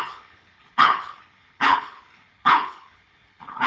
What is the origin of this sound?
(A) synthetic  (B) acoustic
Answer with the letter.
A